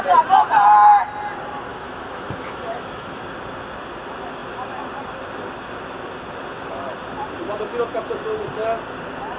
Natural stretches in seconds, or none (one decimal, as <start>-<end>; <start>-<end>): 0.0-1.7; 3.2-9.4